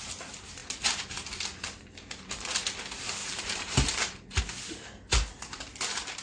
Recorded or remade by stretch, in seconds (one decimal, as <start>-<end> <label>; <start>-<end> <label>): 0.0-3.2 recorded; 3.2-4.4 remade; 4.4-6.2 recorded